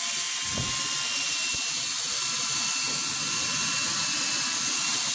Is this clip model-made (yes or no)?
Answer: no